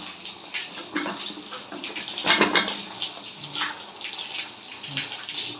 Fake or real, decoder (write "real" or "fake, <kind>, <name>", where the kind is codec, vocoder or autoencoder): real